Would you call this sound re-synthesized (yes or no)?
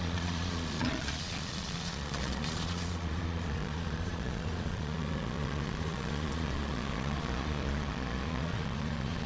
yes